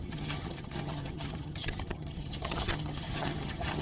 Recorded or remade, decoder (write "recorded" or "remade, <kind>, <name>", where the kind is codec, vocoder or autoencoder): remade, vocoder, HiFi-GAN